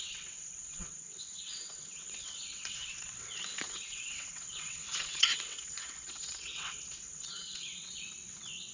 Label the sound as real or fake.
fake